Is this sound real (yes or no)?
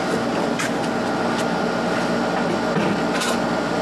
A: yes